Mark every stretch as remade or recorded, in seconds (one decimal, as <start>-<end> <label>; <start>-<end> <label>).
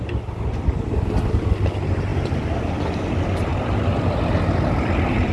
0.0-5.3 recorded